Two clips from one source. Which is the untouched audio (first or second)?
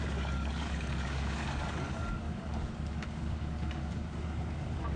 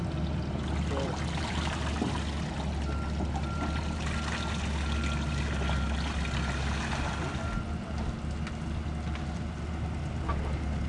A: second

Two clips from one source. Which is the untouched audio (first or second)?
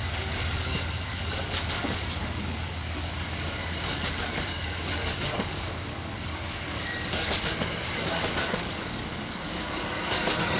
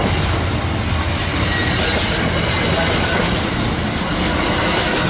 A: second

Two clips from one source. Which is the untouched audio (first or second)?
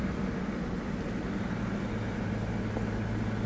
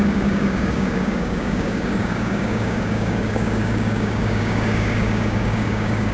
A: first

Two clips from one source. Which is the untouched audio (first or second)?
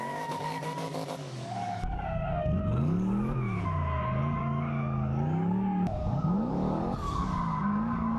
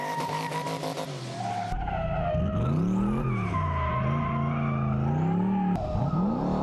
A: second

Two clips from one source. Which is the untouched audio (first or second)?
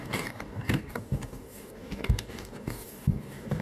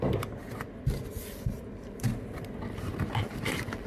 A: second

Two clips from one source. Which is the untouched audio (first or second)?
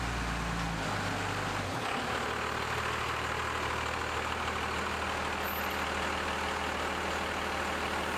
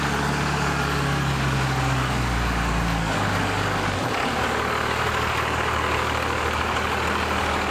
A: first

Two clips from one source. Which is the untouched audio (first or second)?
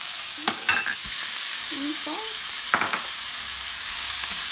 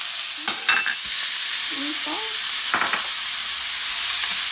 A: second